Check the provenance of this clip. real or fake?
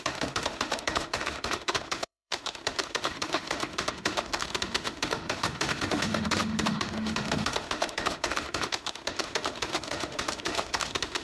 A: fake